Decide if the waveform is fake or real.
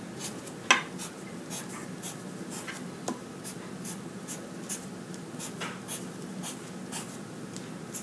real